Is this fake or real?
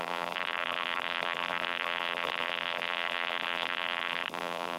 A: fake